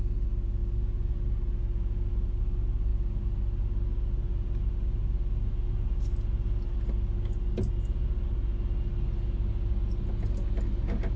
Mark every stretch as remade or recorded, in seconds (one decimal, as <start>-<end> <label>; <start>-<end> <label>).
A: 0.0-11.2 recorded